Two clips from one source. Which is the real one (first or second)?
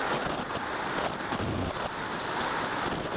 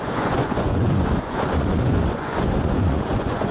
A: first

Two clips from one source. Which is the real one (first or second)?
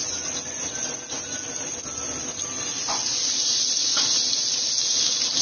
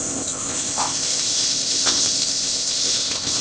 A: first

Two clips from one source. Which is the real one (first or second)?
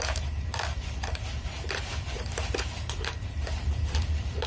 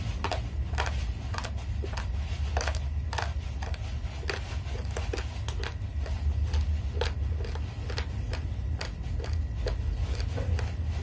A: second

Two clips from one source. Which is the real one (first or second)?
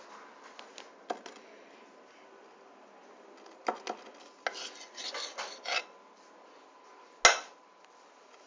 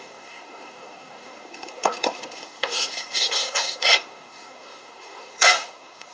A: first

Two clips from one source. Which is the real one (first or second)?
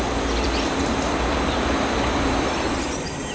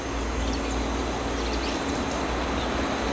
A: second